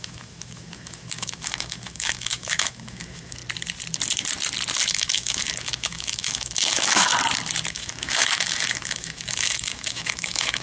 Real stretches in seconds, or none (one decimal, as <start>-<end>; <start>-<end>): 3.4-4.9; 7.1-7.7

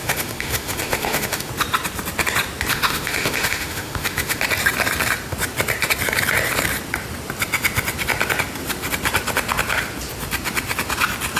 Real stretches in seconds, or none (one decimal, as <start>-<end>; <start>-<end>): 1.5-2.7; 4.4-11.4

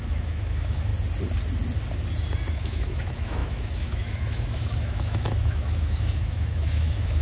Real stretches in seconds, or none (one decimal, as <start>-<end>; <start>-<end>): 0.9-2.5

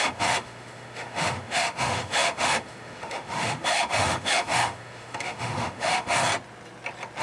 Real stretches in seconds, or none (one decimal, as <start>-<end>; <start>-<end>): 6.2-7.2

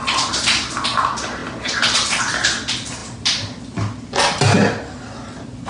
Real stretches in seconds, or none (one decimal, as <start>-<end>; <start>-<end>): 0.0-5.7

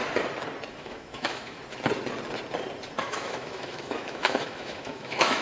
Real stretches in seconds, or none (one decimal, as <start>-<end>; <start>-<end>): 0.0-0.7; 1.6-3.0